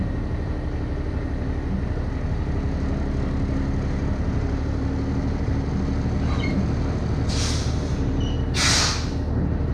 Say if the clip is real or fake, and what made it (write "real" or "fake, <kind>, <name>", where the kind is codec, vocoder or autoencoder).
real